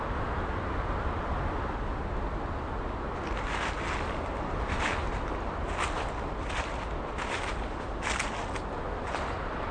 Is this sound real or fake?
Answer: real